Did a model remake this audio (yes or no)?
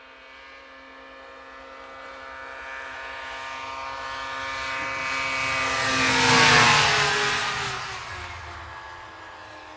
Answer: no